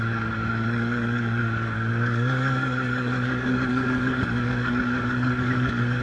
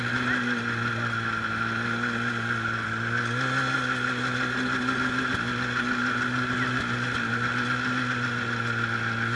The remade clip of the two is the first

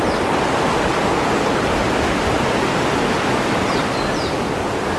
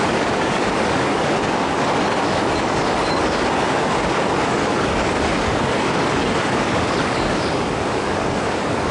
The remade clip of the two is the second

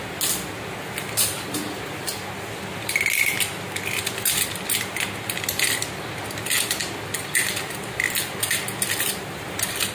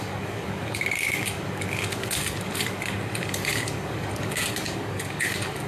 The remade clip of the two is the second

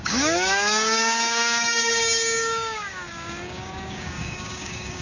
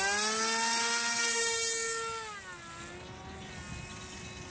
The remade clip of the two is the first